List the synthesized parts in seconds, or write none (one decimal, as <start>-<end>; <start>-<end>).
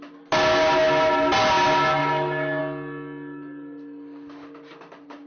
2.0-2.6